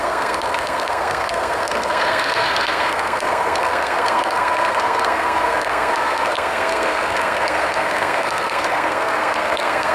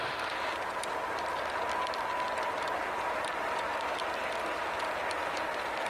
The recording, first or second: second